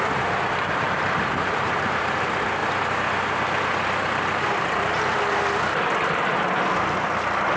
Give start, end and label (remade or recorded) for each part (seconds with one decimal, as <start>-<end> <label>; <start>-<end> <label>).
0.0-2.6 remade; 2.6-7.6 recorded